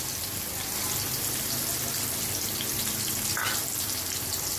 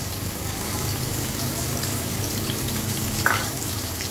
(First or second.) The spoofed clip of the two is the second